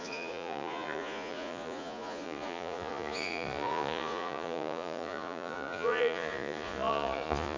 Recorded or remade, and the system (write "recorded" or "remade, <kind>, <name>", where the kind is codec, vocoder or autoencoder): remade, vocoder, Vocos